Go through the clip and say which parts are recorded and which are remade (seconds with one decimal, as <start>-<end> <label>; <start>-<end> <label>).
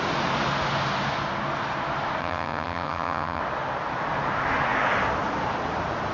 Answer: 0.0-2.2 recorded; 2.2-3.4 remade; 3.4-6.1 recorded